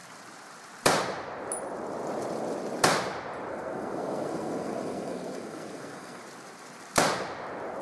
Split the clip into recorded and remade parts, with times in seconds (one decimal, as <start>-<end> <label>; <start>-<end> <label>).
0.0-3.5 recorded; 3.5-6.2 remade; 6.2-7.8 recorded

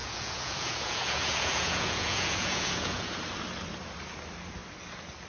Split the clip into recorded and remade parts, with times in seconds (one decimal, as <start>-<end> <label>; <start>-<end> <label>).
0.0-3.2 remade; 3.2-5.3 recorded

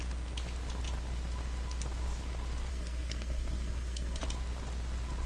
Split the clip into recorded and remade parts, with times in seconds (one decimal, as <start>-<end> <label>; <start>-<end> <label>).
0.0-2.7 recorded; 2.7-4.2 remade; 4.2-5.3 recorded

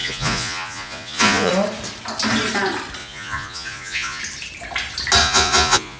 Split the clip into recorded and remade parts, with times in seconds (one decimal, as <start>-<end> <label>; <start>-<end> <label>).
0.0-1.5 remade; 1.5-3.0 recorded; 3.0-4.2 remade; 4.2-5.2 recorded; 5.2-6.0 remade

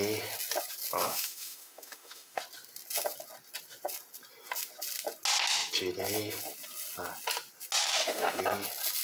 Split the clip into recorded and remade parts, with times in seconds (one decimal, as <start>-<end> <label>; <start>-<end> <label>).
0.0-1.0 recorded; 1.0-2.4 remade; 2.4-7.8 recorded; 7.8-8.4 remade; 8.4-9.0 recorded

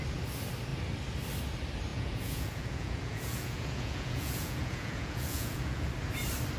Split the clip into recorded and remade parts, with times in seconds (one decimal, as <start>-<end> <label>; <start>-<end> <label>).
0.0-1.9 recorded; 1.9-5.9 remade; 5.9-6.6 recorded